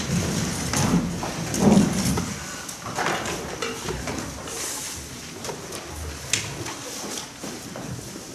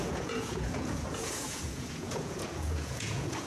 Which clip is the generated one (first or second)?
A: second